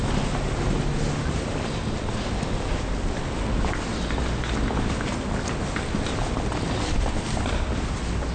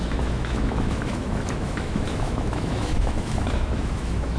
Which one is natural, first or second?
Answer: first